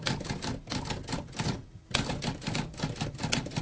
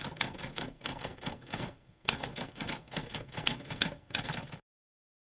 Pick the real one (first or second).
first